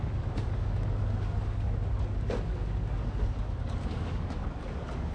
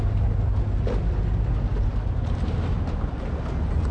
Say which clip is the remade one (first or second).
first